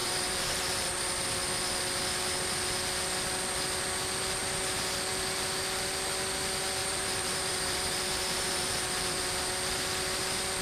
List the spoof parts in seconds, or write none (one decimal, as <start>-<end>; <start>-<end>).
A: 0.0-1.0; 6.8-9.2